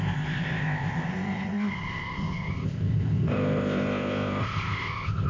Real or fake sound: fake